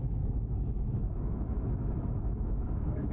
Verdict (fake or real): fake